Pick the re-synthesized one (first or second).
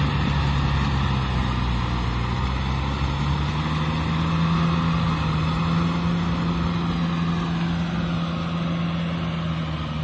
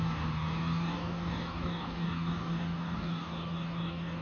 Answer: second